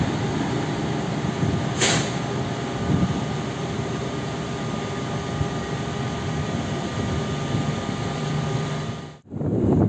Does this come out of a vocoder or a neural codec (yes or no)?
yes